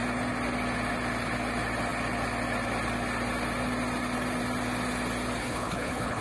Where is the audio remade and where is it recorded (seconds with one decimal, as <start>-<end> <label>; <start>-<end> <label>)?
0.0-5.4 recorded; 5.4-6.2 remade